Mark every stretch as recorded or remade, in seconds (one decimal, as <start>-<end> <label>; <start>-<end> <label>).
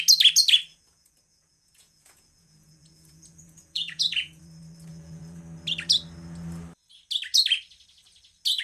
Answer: 0.0-0.7 recorded; 0.7-4.4 remade; 4.4-4.9 recorded; 4.9-5.4 remade; 5.4-8.6 recorded